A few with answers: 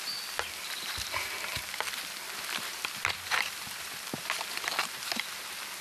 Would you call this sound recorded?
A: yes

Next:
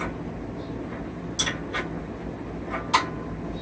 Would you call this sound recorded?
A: yes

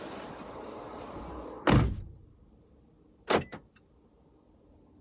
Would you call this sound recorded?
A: yes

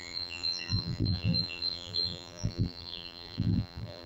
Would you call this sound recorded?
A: no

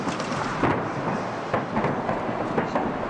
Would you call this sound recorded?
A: yes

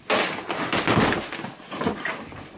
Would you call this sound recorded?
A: yes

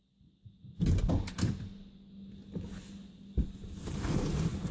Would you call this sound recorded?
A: yes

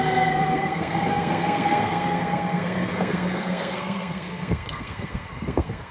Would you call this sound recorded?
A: no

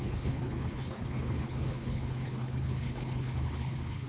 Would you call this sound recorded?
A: no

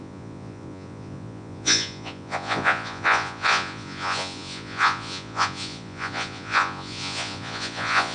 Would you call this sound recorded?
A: no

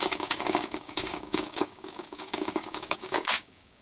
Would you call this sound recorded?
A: no